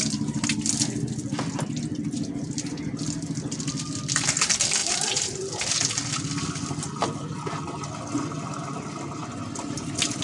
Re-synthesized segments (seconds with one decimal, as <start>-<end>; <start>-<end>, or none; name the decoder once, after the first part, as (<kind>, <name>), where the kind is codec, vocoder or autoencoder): 4.8-5.7 (vocoder, BigVGAN v2)